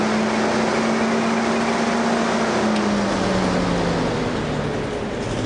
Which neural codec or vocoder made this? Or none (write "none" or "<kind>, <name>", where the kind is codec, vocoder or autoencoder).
none